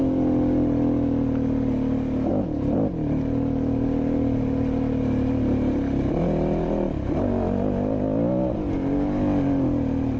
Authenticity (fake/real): real